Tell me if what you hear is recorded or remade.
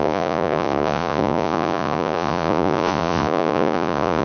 remade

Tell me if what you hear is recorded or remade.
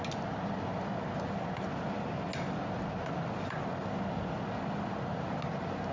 recorded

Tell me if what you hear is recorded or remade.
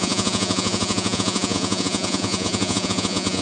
remade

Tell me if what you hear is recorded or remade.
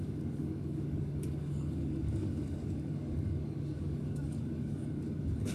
remade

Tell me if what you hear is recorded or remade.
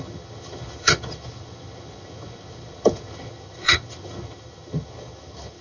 remade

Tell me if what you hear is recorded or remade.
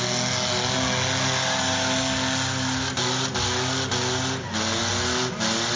recorded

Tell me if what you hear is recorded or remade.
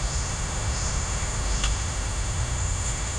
remade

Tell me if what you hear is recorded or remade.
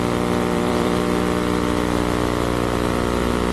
remade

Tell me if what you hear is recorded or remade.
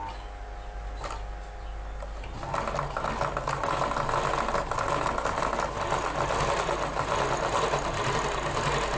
recorded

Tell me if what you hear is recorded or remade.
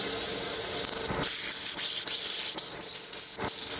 recorded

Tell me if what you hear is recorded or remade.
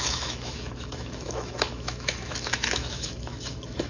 remade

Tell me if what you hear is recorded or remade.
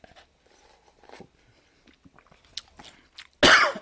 recorded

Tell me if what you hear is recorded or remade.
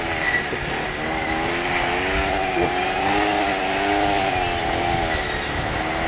recorded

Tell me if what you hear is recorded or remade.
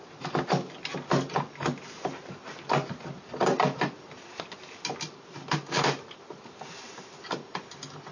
recorded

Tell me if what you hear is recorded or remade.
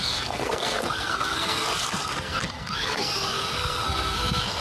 remade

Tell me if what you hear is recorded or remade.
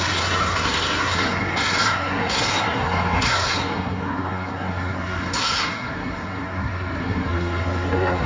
remade